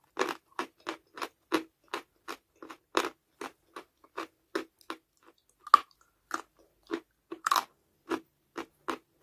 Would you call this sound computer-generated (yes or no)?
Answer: no